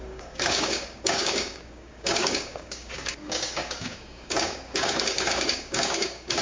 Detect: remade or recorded remade